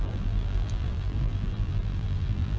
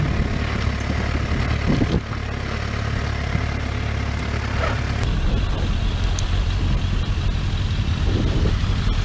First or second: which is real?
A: second